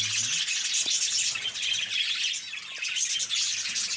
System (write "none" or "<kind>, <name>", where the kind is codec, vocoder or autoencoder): none